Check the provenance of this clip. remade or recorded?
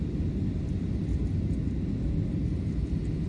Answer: recorded